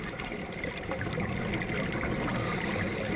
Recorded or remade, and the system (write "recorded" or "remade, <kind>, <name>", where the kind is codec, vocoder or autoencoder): recorded